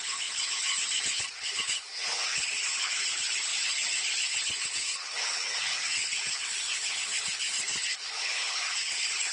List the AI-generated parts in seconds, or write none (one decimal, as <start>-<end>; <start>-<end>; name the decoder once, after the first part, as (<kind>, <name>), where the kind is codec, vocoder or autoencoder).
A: 0.0-9.3 (codec, HILCodec)